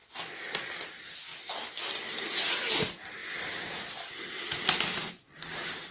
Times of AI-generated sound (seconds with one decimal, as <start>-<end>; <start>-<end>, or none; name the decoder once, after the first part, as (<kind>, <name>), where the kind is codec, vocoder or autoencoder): none